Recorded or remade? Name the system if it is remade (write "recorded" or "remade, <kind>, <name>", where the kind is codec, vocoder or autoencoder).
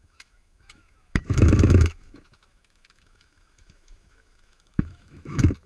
remade, autoencoder, DAC-VAE